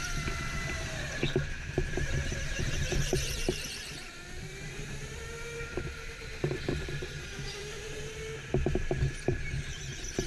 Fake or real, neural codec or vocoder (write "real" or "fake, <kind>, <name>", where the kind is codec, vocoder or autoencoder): fake, vocoder, BigVGAN v2